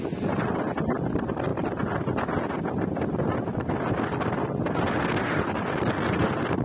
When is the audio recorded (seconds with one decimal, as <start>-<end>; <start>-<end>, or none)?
0.0-6.6